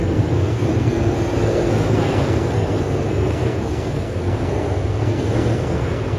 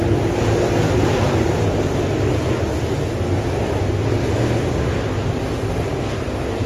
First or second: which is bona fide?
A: second